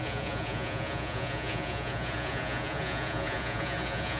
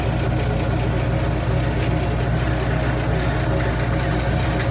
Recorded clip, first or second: second